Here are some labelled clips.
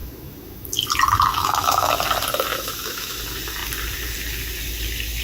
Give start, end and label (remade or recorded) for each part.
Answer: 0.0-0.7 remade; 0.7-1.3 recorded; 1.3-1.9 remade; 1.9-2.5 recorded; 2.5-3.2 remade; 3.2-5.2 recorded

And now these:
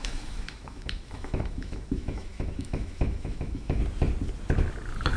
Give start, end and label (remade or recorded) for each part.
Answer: 0.0-3.8 remade; 3.8-5.2 recorded

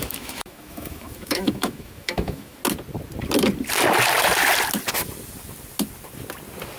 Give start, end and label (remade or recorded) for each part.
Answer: 0.0-2.6 remade; 2.6-6.8 recorded

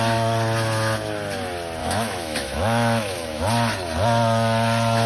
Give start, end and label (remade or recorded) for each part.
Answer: 0.0-1.8 recorded; 1.8-3.4 remade; 3.4-5.1 recorded

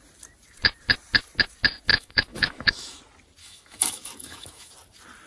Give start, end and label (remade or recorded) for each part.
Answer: 0.0-1.9 recorded; 1.9-3.0 remade; 3.0-3.4 recorded; 3.4-4.7 remade; 4.7-5.3 recorded

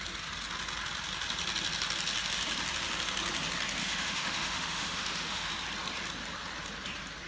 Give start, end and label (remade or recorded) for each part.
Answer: 0.0-3.8 recorded; 3.8-5.5 remade; 5.5-7.3 recorded